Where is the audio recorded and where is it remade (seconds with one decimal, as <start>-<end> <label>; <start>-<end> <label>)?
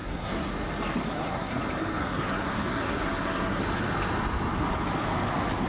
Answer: 0.0-0.5 remade; 0.5-1.1 recorded; 1.1-1.6 remade; 1.6-2.0 recorded; 2.0-3.6 remade; 3.6-5.7 recorded